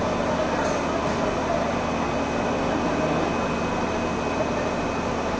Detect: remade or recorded recorded